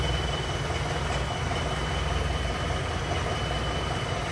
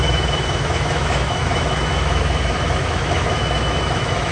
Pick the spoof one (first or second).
second